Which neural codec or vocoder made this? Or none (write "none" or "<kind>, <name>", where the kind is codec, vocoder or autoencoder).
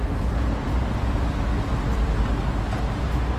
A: none